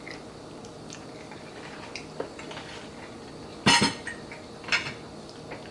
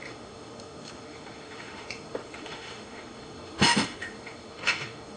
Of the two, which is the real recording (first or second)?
first